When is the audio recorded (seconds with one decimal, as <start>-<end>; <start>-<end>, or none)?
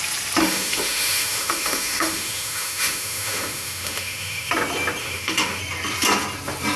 0.0-0.4; 4.5-5.0; 5.6-6.8